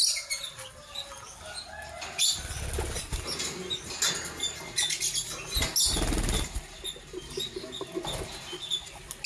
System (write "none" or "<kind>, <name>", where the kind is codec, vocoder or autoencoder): none